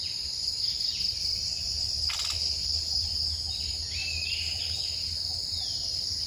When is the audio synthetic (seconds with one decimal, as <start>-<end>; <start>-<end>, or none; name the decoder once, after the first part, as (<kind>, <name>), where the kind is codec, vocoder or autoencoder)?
none